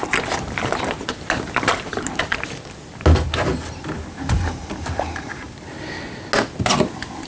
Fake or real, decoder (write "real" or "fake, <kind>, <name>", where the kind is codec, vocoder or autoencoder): real